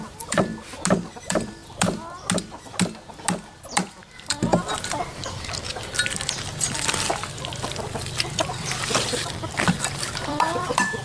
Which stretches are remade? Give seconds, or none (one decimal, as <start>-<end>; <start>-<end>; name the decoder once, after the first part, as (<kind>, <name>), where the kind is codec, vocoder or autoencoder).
0.0-0.5 (vocoder, BigVGAN v2); 1.1-1.6; 4.1-4.5; 7.5-11.0